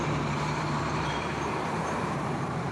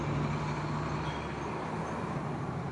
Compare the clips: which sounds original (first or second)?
second